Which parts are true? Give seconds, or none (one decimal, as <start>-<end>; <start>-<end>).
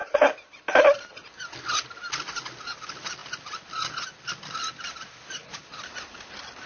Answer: 0.0-6.7